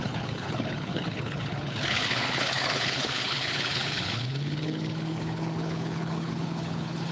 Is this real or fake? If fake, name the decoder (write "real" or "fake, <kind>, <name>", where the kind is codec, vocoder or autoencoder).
fake, codec, HILCodec